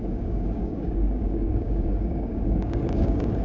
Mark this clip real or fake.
fake